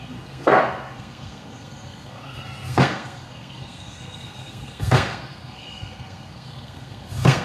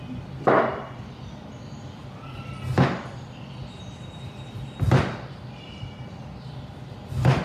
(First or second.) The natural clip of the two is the second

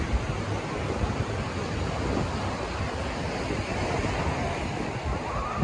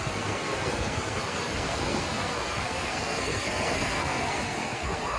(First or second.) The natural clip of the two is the first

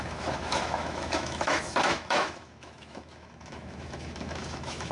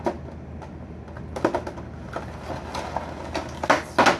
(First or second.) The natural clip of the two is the second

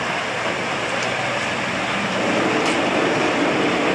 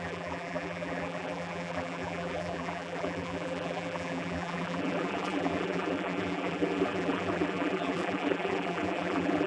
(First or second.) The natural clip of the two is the first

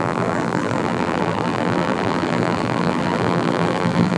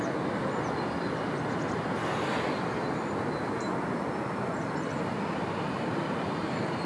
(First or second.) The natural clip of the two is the second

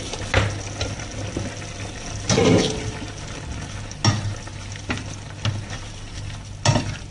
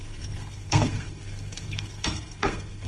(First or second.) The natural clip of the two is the first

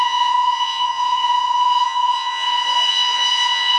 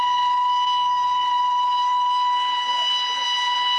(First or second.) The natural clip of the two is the second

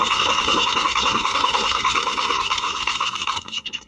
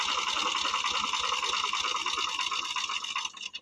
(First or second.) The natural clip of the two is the second